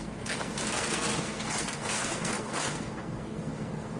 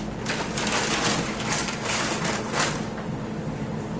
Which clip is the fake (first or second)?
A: first